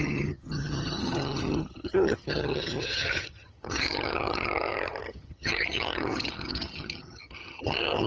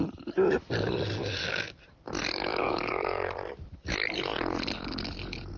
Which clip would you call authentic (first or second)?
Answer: second